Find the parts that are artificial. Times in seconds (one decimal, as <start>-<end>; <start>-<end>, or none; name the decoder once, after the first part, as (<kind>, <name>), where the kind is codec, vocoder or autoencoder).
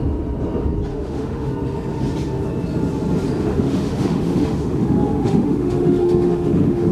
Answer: 0.9-1.5 (autoencoder, DAC-VAE); 3.5-6.9